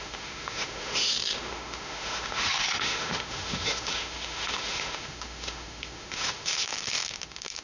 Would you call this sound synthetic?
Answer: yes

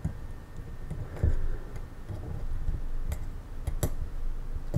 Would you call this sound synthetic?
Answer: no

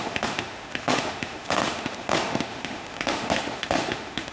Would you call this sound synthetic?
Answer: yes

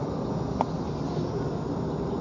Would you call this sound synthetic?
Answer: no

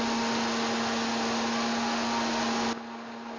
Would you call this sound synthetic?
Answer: no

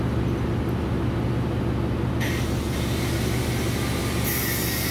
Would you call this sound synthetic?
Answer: no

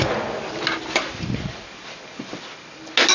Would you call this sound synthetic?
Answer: no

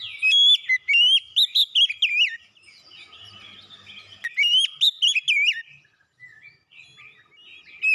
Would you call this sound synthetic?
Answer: no